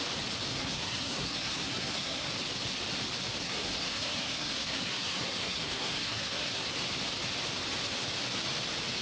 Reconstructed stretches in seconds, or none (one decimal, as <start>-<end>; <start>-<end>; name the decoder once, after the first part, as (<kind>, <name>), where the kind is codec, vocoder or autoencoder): 0.5-2.3 (codec, SNAC); 3.4-6.7